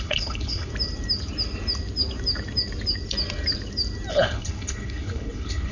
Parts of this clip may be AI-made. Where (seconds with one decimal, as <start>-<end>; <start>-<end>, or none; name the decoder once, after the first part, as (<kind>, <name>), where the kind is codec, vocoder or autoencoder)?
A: 0.0-0.7 (codec, HILCodec); 4.1-5.7